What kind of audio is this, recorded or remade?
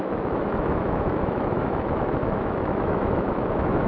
remade